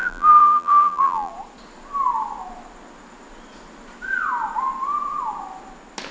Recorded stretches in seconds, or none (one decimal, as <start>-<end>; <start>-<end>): 1.3-6.1